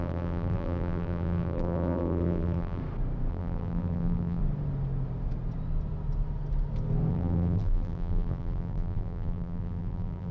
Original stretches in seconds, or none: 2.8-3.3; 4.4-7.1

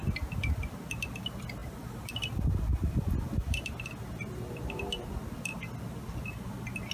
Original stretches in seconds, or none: 0.0-1.6; 2.1-6.9

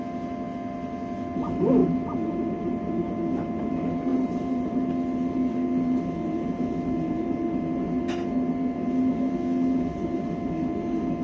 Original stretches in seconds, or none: 0.0-4.1; 4.9-11.2

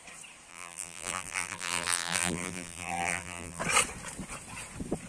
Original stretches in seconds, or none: 0.0-0.5; 3.6-5.1